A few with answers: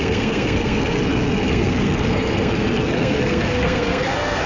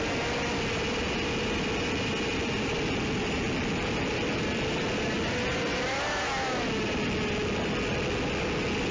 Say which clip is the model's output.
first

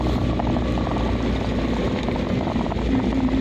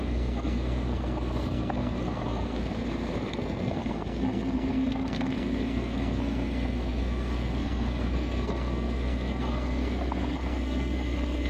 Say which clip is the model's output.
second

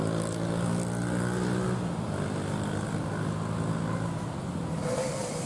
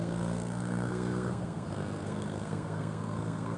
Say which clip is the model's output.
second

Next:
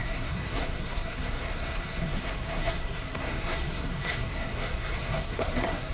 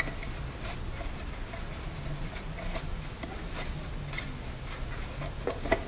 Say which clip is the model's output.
first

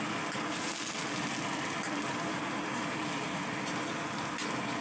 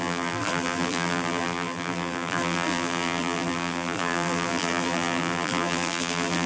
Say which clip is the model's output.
second